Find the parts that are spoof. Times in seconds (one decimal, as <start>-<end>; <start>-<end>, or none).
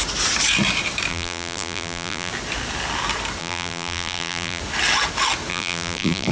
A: 1.1-2.3; 3.4-4.6; 5.5-6.3